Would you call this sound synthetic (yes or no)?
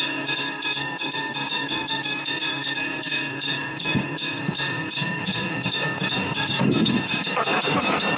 yes